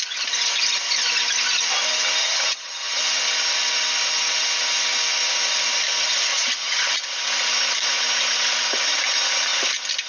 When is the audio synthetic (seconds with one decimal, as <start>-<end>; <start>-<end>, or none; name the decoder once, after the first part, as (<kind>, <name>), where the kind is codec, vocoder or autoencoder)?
2.2-3.0 (vocoder, HiFi-GAN); 6.3-6.9